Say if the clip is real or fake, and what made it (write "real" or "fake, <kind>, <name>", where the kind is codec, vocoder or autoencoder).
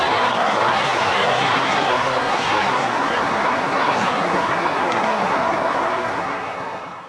fake, codec, SNAC